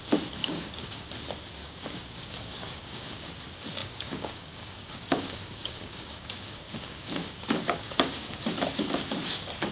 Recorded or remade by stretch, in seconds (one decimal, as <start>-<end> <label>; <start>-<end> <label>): 0.0-0.4 recorded; 0.4-1.1 remade; 1.1-1.6 recorded; 1.6-3.3 remade; 3.3-3.8 recorded; 3.8-8.3 remade; 8.3-9.7 recorded